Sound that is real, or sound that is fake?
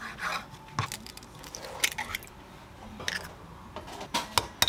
real